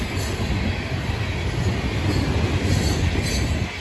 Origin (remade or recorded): recorded